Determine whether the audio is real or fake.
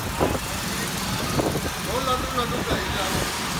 real